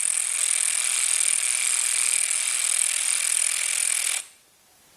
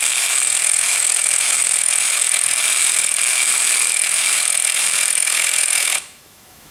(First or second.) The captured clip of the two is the first